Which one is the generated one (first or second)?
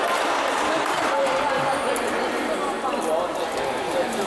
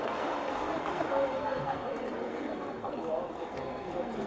second